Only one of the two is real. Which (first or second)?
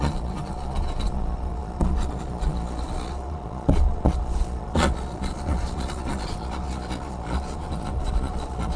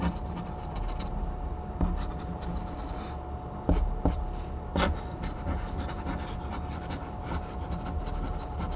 second